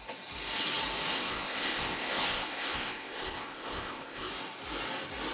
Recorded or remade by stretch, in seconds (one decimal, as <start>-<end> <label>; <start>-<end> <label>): 0.0-1.1 recorded; 1.1-4.3 remade; 4.3-5.3 recorded